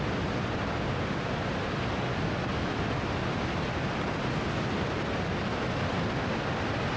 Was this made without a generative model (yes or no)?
yes